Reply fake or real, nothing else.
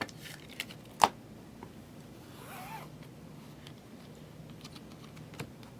real